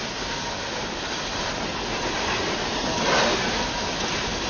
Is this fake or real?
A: real